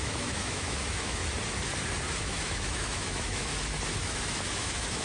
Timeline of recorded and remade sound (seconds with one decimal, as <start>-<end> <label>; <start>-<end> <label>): 0.0-1.2 remade; 1.2-2.2 recorded; 2.2-3.5 remade; 3.5-4.0 recorded; 4.0-5.0 remade